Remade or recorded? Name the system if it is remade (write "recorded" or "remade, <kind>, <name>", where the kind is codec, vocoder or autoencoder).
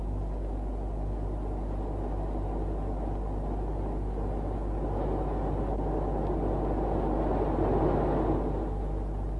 recorded